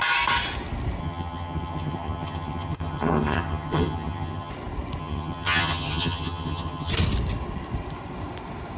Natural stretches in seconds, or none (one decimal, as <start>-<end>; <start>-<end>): 0.0-1.0; 4.5-5.0; 6.9-8.8